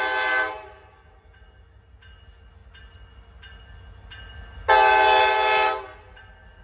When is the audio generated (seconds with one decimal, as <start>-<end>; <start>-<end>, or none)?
none